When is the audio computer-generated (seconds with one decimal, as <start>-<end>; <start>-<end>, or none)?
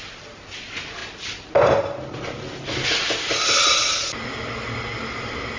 none